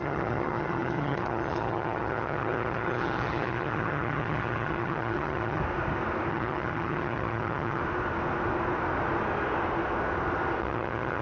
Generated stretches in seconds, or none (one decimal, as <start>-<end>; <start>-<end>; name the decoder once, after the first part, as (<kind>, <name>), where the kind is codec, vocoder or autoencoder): 0.0-5.6 (vocoder, HiFi-GAN); 6.3-7.8; 10.6-11.2